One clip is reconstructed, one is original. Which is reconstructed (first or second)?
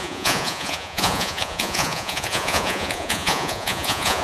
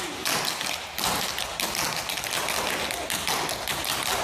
first